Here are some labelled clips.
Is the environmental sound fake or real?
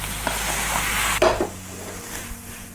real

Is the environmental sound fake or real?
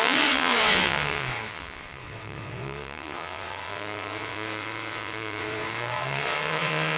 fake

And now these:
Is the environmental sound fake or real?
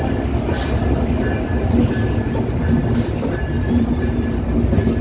real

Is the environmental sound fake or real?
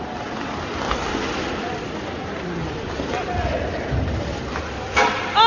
real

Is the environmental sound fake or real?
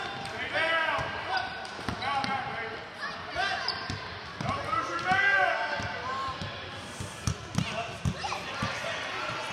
real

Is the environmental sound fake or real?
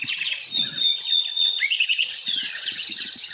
fake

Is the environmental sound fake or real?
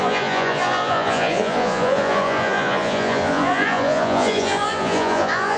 fake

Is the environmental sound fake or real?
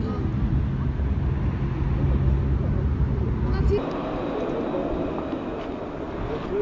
real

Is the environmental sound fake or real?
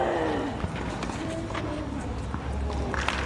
real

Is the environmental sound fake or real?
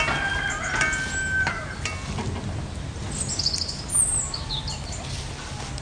real